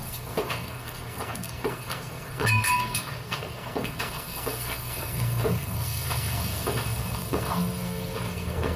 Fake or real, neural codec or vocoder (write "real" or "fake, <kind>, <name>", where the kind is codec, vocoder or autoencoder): fake, codec, SNAC